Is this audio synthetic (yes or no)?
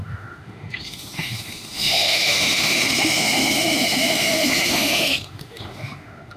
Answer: yes